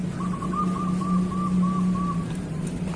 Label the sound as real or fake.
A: real